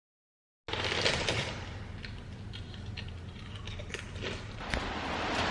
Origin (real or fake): real